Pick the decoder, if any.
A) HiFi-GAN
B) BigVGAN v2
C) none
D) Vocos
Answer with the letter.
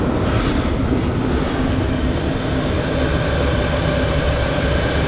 C